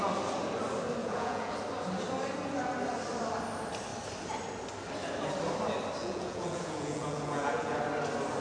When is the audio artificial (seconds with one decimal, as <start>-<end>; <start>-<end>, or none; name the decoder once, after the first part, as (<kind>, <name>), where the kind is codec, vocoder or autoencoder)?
1.0-1.6 (vocoder, Vocos); 6.0-7.8